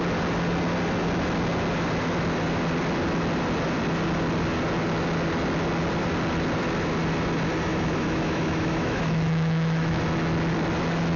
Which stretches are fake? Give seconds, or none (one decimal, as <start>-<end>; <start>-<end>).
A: 7.7-10.0